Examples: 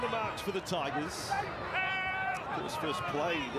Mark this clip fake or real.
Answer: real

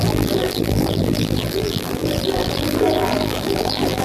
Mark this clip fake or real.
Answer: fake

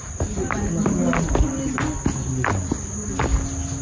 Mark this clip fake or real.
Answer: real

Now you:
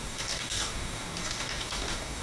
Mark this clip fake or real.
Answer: fake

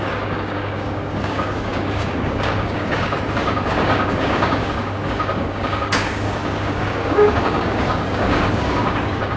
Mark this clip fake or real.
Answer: fake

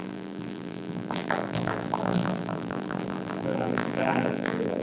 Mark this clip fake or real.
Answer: fake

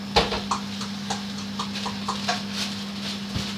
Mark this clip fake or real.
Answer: real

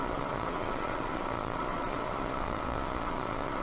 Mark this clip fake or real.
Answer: fake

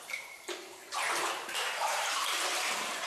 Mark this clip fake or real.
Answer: fake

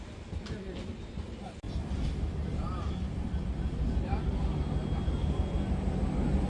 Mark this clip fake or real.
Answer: real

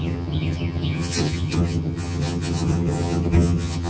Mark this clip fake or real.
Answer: fake